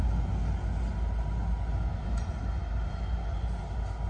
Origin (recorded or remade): recorded